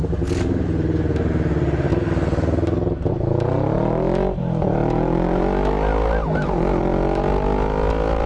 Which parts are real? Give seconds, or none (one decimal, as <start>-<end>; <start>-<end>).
0.0-8.3